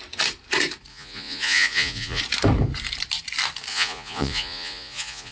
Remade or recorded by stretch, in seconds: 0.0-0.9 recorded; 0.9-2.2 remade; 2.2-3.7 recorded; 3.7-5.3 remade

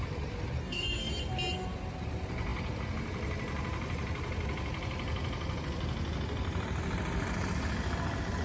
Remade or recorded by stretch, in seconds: 0.0-0.6 recorded; 0.6-1.1 remade; 1.1-8.4 recorded

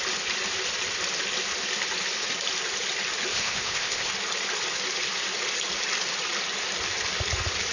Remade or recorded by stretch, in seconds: 0.0-3.3 recorded; 3.3-4.1 remade; 4.1-7.7 recorded

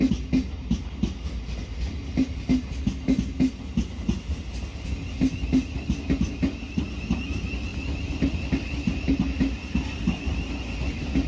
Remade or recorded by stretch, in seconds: 0.0-11.3 recorded

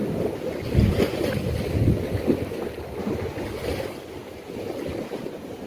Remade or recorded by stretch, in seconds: 0.0-5.7 recorded

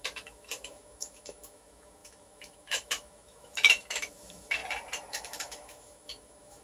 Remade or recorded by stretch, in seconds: 0.0-4.6 remade; 4.6-5.1 recorded; 5.1-6.6 remade

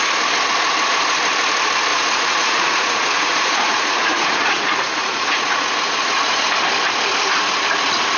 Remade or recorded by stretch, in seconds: 0.0-1.9 recorded; 1.9-6.5 remade; 6.5-8.2 recorded